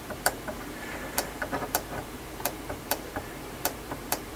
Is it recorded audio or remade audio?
remade